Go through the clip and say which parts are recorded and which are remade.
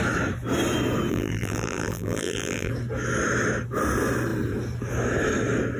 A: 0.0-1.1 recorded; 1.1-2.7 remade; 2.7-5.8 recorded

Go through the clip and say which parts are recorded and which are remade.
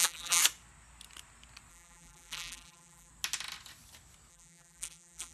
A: 0.0-0.4 remade; 0.4-1.7 recorded; 1.7-3.1 remade; 3.1-4.3 recorded; 4.3-5.3 remade